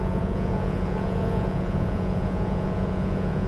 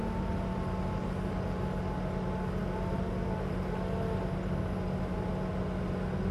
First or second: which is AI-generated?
first